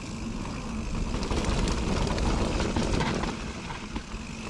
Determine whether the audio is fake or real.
real